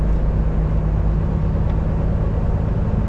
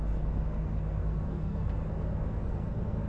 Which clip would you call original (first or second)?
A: first